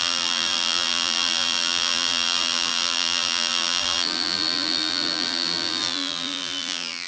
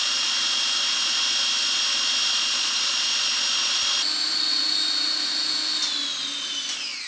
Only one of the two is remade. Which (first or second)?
first